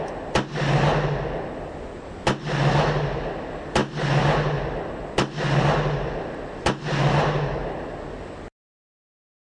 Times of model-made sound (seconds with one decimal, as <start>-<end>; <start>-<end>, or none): none